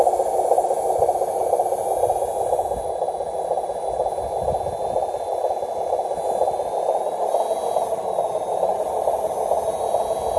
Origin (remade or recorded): recorded